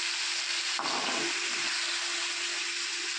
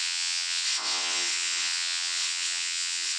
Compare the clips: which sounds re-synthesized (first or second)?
second